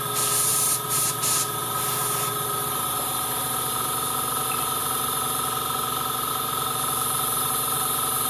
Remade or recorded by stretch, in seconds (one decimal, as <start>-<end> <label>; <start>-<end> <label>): 0.0-0.5 recorded; 0.5-4.1 remade; 4.1-8.3 recorded